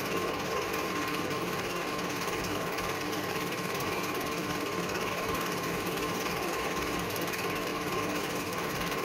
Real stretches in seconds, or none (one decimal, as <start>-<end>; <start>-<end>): none